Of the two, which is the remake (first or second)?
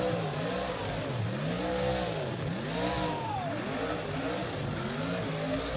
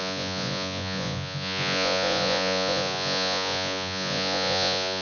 second